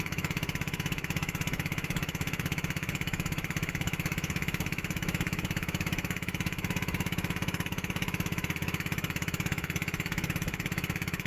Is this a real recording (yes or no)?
no